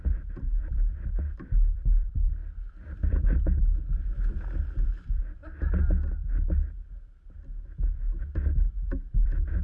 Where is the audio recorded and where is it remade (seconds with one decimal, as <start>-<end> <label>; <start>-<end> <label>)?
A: 0.0-5.4 remade; 5.4-9.0 recorded; 9.0-9.6 remade